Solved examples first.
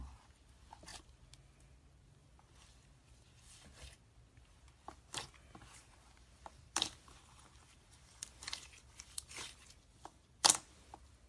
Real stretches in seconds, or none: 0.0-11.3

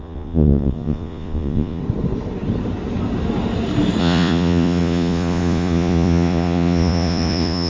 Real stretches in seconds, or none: 1.8-4.0

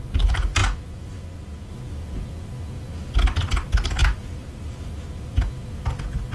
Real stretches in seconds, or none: 0.0-4.0; 4.7-6.3